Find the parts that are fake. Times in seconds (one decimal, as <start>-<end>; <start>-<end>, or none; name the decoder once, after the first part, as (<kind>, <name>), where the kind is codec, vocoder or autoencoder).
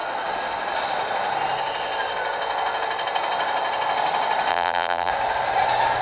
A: 4.5-5.1 (vocoder, BigVGAN v2)